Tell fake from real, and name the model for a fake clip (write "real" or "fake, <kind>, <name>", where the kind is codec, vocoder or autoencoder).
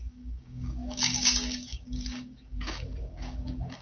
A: fake, codec, DAC